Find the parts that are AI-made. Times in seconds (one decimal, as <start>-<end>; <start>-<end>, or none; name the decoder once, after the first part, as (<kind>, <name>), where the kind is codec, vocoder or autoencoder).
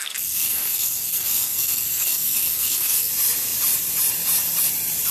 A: 0.0-3.1 (codec, SNAC)